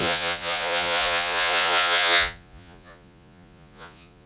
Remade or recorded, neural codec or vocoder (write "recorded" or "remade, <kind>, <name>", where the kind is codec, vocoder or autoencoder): remade, vocoder, Vocos